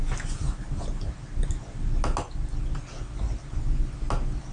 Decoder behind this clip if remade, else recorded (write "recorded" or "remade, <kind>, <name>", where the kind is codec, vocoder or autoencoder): recorded